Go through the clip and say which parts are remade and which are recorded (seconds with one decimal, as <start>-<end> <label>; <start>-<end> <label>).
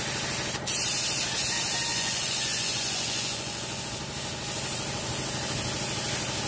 0.0-1.9 recorded; 1.9-3.8 remade; 3.8-6.5 recorded